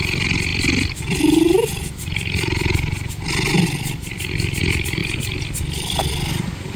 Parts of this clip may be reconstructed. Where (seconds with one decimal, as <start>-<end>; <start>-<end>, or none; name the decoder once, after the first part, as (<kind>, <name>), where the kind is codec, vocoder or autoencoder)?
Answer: none